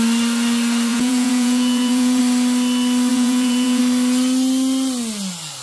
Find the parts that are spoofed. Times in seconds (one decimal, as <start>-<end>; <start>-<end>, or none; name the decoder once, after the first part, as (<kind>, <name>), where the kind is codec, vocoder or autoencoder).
0.9-2.2 (vocoder, Vocos); 3.1-3.8